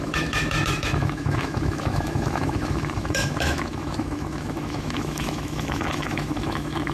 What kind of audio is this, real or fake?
fake